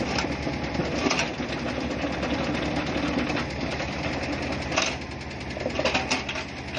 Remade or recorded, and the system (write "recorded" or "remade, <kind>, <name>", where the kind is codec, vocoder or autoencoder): recorded